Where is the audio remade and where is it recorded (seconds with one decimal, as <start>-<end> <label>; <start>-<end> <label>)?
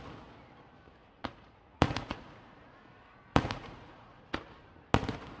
0.0-1.0 recorded; 1.0-4.2 remade; 4.2-5.4 recorded